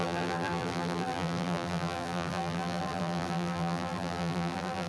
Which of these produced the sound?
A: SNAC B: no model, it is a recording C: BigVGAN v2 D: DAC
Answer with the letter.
C